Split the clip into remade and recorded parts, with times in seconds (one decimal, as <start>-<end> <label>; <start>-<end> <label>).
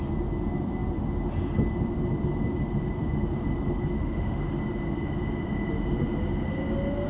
0.0-4.0 recorded; 4.0-4.6 remade; 4.6-7.1 recorded